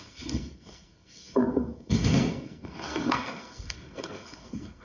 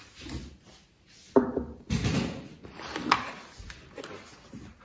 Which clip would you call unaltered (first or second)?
second